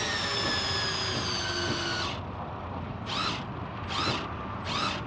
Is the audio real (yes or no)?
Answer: yes